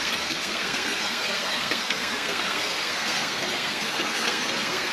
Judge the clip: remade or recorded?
remade